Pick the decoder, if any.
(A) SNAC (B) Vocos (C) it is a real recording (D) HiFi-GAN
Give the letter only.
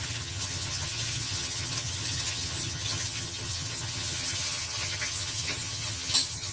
D